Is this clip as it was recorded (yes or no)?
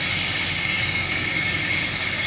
no